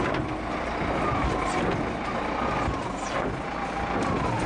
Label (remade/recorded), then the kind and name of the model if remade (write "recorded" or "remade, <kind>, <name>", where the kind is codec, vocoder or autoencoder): recorded